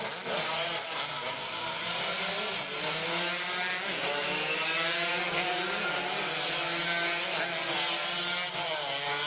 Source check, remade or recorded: recorded